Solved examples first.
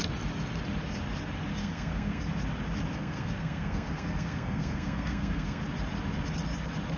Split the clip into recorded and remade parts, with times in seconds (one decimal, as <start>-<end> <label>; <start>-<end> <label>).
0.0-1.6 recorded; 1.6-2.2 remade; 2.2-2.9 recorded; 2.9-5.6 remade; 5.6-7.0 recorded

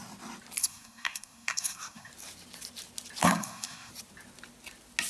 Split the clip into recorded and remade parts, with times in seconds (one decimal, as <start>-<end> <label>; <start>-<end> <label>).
0.0-0.6 recorded; 0.6-2.1 remade; 2.1-3.2 recorded; 3.2-3.9 remade; 3.9-5.1 recorded

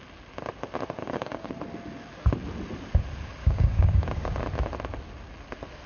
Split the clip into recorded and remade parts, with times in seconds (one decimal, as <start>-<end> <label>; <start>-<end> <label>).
0.0-1.0 recorded; 1.0-1.5 remade; 1.5-3.4 recorded; 3.4-4.3 remade; 4.3-5.9 recorded

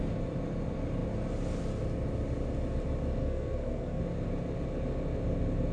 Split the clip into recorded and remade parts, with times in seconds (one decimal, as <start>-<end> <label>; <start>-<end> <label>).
0.0-3.2 recorded; 3.2-4.0 remade; 4.0-5.7 recorded

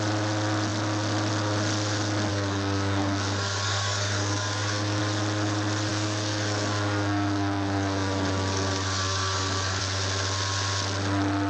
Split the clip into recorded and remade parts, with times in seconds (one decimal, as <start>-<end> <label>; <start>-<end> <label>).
0.0-2.3 recorded; 2.3-5.0 remade; 5.0-5.9 recorded; 5.9-9.8 remade; 9.8-11.5 recorded